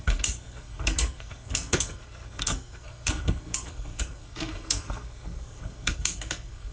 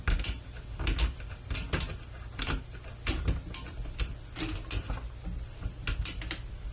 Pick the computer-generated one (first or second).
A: first